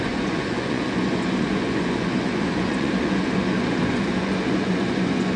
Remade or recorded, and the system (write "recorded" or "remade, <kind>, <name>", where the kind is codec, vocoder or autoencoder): remade, vocoder, Vocos